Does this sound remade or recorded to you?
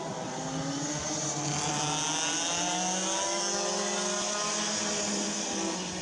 recorded